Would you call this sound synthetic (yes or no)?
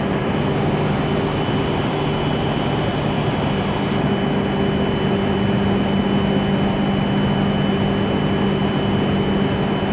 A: no